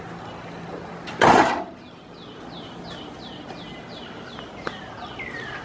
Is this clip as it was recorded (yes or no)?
yes